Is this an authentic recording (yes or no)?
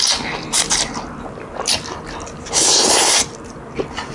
no